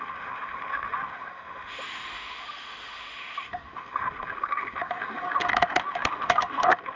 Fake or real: fake